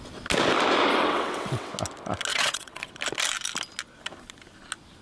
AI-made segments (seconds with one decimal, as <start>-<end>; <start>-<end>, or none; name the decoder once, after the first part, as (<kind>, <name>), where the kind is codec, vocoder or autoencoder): 0.9-1.7 (vocoder, WaveNeXt); 2.3-2.9